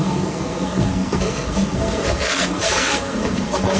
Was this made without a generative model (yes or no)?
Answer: no